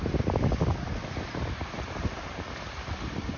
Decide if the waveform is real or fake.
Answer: real